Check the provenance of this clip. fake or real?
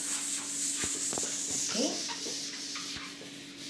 real